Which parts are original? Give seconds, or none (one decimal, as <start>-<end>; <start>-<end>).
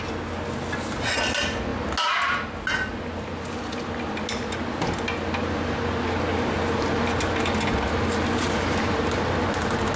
0.0-10.0